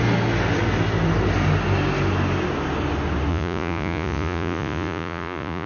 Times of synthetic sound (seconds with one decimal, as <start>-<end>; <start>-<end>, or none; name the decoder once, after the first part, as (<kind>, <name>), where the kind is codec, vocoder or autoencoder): 3.3-5.7 (vocoder, Vocos)